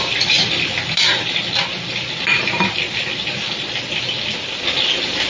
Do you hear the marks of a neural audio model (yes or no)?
no